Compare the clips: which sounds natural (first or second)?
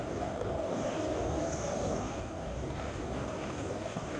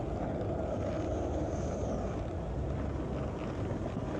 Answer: second